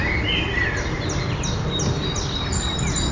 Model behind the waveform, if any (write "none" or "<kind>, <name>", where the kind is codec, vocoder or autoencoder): none